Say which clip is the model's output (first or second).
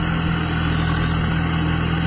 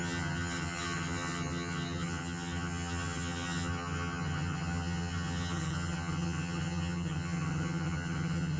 second